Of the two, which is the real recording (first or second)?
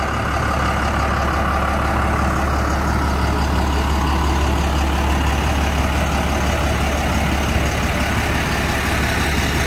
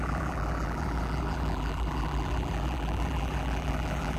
first